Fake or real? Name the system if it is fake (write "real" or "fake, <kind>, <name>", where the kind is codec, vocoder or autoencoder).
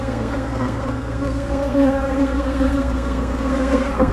fake, codec, SNAC